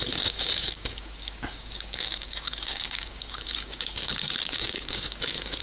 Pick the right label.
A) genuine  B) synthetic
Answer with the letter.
B